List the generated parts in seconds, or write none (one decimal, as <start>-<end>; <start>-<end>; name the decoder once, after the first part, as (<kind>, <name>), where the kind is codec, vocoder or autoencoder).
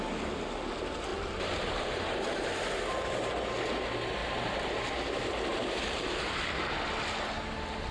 1.1-2.5 (vocoder, BigVGAN v2); 4.2-4.9; 5.5-6.2